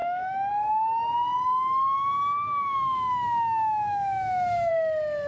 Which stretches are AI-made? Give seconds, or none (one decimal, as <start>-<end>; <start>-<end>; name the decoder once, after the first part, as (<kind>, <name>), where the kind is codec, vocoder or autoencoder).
0.0-0.5 (autoencoder, DAC-VAE); 1.5-4.7